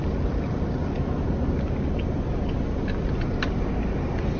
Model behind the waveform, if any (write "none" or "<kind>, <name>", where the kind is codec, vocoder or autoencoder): none